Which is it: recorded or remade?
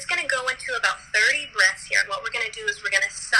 recorded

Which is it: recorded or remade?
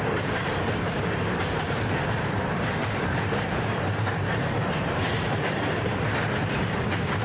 remade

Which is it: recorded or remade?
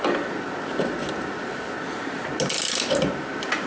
recorded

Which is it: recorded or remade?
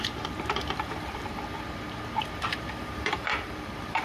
remade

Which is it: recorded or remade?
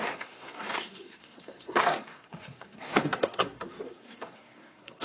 remade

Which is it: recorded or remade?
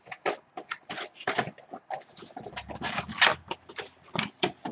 recorded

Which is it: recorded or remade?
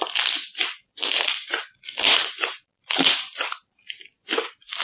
recorded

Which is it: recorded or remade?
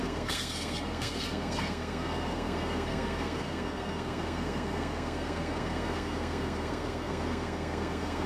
remade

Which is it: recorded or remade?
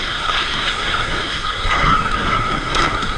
remade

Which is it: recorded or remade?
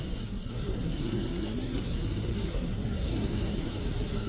remade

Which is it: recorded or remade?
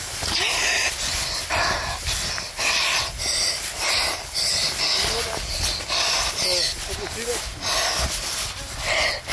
recorded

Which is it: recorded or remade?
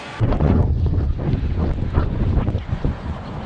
remade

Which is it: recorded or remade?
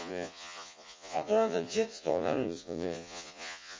remade